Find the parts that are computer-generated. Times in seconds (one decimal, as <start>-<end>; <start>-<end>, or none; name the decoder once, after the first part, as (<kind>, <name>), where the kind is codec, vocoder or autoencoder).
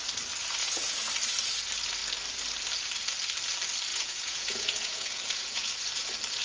0.6-1.1 (vocoder, Vocos); 3.9-5.7